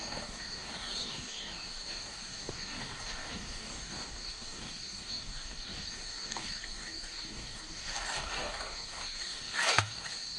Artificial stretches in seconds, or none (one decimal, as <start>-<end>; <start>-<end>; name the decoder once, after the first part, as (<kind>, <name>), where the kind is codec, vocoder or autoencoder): 0.0-10.4 (codec, DAC)

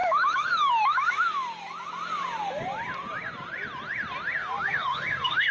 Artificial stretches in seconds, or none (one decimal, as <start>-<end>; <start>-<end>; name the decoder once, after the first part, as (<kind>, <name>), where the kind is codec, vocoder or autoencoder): 0.0-0.7 (codec, DAC); 4.4-5.5

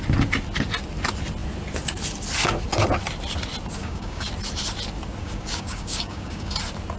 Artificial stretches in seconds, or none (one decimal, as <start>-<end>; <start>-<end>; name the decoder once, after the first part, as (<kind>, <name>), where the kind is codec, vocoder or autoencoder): 3.8-4.3 (codec, DAC); 5.2-6.5

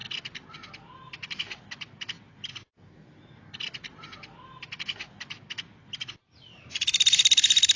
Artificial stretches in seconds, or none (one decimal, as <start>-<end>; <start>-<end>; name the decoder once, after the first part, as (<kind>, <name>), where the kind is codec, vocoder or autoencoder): none